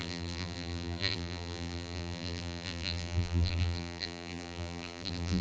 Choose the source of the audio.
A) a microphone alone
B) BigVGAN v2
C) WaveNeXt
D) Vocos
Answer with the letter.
B